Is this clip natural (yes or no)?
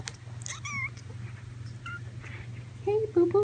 yes